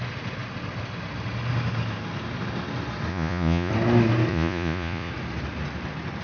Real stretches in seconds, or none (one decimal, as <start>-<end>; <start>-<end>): 0.0-3.1; 3.7-4.3; 5.1-6.2